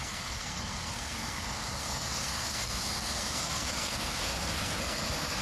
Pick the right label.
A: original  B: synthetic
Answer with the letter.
B